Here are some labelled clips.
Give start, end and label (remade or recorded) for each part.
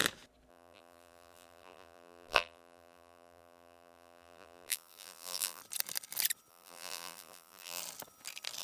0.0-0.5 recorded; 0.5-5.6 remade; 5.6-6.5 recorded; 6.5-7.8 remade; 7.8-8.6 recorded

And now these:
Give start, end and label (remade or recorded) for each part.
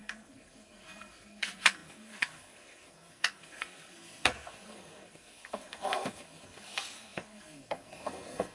0.0-8.5 remade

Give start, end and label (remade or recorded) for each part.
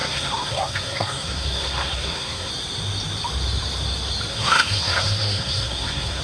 0.0-2.5 remade; 2.5-4.3 recorded; 4.3-6.2 remade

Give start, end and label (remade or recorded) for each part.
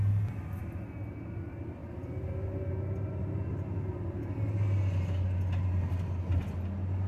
0.0-7.1 recorded